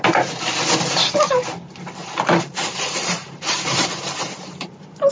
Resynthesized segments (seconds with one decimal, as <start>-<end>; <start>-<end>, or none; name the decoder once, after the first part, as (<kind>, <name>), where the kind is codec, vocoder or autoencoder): 2.0-5.1 (vocoder, BigVGAN v2)